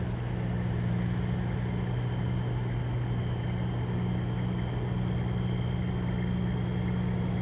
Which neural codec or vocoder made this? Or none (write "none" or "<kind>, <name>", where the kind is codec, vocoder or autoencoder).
none